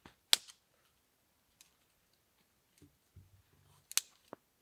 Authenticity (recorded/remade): recorded